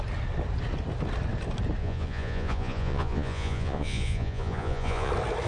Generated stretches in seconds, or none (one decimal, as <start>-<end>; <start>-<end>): 1.8-5.1